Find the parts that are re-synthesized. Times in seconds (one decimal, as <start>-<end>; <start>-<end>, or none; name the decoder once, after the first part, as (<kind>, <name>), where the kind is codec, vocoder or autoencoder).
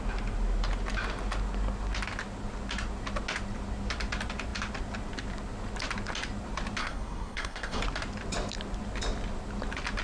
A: 6.8-7.8 (codec, SNAC)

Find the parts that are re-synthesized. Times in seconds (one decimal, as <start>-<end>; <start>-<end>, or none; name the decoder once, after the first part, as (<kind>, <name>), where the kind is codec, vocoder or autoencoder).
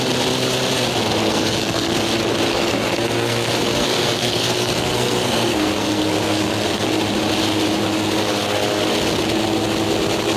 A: 1.2-2.0 (codec, SNAC); 2.5-7.0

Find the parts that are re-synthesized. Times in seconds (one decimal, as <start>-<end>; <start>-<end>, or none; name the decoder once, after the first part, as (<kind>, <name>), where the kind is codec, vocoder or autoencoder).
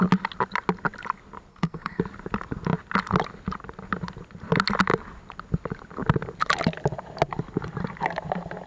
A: 1.5-2.0 (codec, SNAC)